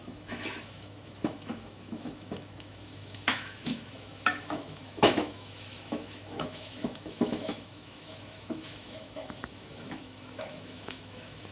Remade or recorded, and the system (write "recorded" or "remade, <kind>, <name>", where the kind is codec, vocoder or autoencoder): remade, autoencoder, DAC-VAE